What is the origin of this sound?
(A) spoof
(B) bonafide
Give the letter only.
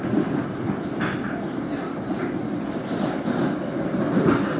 B